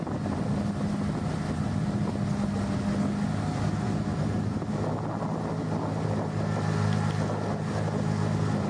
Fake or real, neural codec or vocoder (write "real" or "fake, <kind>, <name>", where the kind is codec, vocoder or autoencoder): real